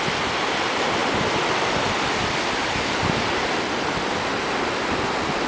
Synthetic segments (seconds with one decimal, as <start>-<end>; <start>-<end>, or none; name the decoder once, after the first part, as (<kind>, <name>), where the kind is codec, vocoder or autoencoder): none